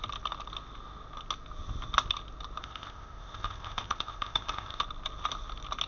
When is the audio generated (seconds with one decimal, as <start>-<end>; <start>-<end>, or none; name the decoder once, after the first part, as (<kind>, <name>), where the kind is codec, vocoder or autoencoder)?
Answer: 2.6-4.8 (codec, ZipCodec)